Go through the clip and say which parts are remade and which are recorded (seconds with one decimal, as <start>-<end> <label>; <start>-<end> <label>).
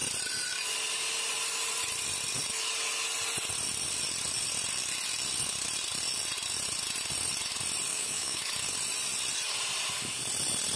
0.0-7.9 recorded; 7.9-8.5 remade; 8.5-10.8 recorded